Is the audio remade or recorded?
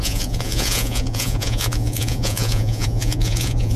remade